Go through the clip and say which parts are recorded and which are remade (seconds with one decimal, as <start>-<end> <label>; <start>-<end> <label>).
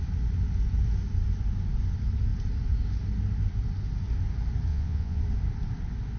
0.0-4.7 recorded; 4.7-5.2 remade; 5.2-6.2 recorded